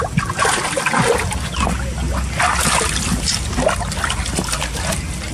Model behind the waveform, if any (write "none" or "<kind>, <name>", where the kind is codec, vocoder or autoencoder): none